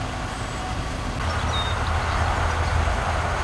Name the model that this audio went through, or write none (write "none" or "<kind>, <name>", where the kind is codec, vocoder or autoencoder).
none